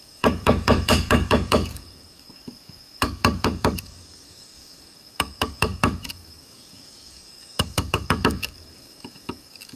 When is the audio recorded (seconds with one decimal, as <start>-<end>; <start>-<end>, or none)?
none

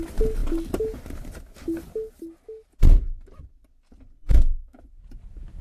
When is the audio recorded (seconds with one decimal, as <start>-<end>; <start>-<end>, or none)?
0.0-4.2; 4.8-5.6

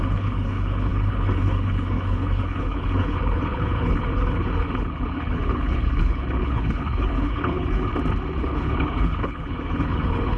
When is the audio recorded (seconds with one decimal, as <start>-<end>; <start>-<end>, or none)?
7.9-8.4

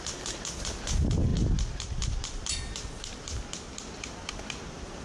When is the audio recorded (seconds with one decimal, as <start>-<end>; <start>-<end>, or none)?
0.0-5.0

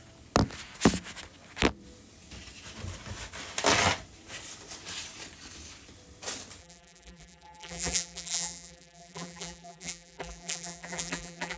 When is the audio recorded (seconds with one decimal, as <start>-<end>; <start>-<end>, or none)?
0.0-6.6

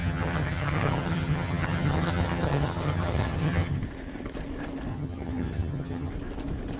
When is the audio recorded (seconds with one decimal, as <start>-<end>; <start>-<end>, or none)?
3.8-4.9; 6.1-6.8